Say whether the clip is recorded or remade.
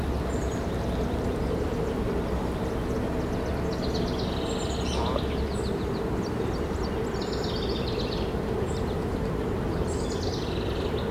recorded